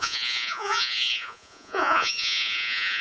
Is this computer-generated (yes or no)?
yes